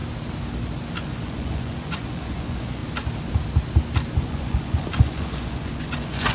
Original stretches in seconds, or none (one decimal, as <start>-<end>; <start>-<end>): 0.0-1.0; 2.8-4.2